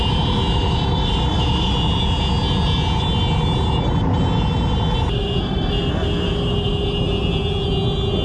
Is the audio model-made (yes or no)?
no